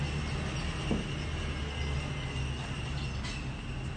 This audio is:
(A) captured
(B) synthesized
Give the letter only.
A